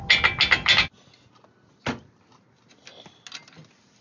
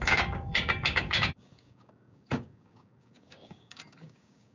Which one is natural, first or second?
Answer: first